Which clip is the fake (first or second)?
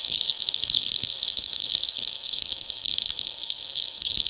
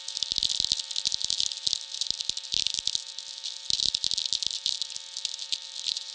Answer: first